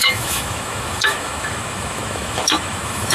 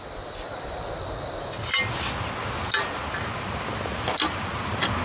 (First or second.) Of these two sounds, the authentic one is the second